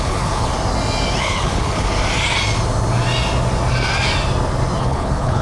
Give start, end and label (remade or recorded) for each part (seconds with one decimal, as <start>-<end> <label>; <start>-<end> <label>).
0.0-0.5 remade; 0.5-1.2 recorded; 1.2-1.9 remade; 1.9-4.8 recorded; 4.8-5.4 remade